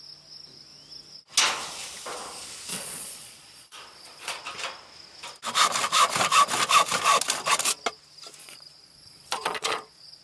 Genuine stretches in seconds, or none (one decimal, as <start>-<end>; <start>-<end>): 0.0-2.7; 4.4-8.4